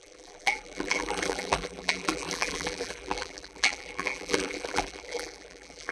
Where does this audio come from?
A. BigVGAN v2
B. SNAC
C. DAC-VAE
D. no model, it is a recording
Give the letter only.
A